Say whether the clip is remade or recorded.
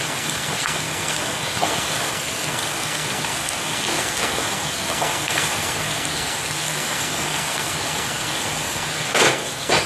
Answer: remade